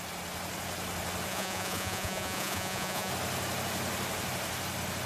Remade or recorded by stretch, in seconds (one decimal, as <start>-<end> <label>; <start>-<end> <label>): 0.0-1.3 recorded; 1.3-3.1 remade; 3.1-5.1 recorded